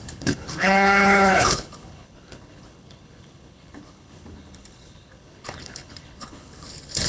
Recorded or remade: remade